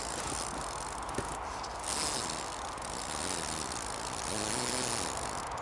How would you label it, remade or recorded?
recorded